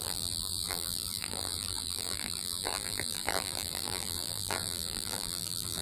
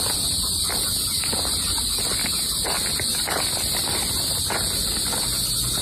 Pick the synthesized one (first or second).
first